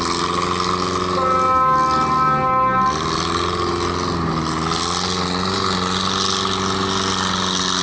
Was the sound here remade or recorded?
recorded